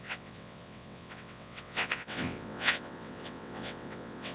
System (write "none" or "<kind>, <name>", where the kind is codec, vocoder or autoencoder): vocoder, WaveNeXt